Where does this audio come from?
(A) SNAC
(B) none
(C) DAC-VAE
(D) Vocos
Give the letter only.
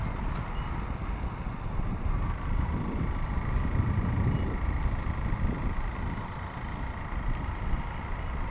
B